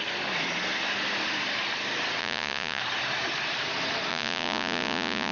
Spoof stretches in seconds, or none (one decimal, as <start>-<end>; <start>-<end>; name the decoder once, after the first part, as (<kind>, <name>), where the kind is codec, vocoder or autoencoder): 2.2-2.8 (vocoder, Vocos); 4.1-5.3